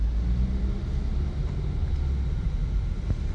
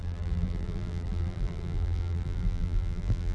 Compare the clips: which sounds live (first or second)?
first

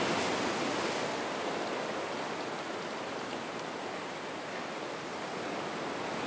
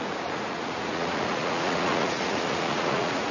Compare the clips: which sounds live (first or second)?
first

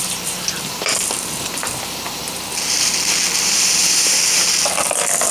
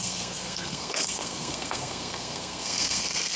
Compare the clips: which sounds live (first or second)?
first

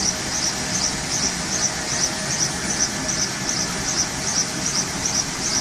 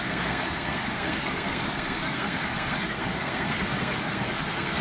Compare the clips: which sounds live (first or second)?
first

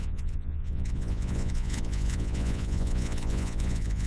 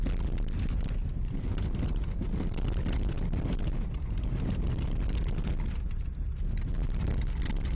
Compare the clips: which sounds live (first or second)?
second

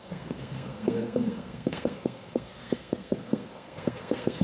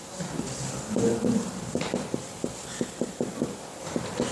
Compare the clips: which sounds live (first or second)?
second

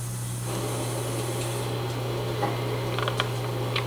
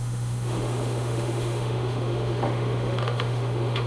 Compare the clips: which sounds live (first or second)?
first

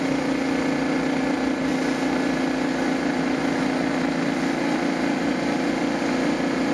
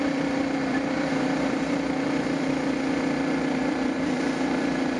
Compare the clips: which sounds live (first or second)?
first